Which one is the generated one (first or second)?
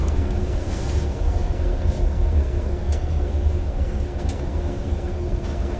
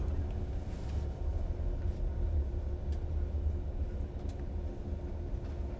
first